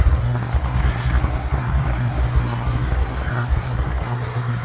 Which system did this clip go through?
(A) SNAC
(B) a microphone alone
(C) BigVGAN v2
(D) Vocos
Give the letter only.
A